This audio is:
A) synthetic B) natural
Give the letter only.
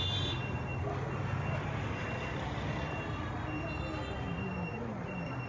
B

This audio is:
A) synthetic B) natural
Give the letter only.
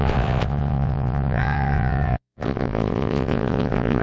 A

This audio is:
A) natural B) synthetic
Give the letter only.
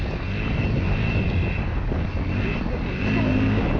A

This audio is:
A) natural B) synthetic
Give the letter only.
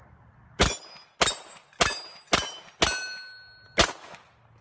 A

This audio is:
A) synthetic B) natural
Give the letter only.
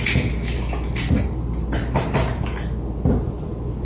B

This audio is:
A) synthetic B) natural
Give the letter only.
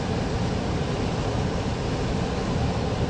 B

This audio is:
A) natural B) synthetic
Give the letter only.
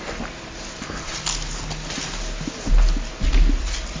A